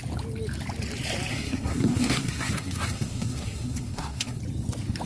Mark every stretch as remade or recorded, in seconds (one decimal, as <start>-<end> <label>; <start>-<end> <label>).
0.0-1.3 recorded; 1.3-4.4 remade; 4.4-5.1 recorded